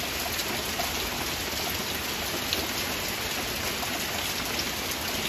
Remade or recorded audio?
recorded